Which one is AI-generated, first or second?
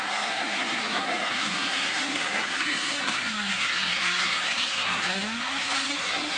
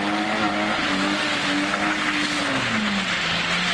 first